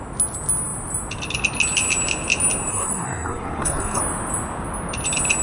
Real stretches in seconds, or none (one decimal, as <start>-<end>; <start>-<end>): 0.0-2.7; 4.0-5.4